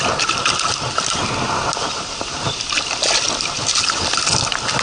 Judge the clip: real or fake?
real